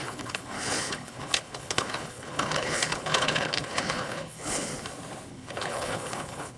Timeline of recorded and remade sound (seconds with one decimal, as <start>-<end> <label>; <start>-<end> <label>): 0.0-4.7 remade; 4.7-5.3 recorded; 5.3-6.6 remade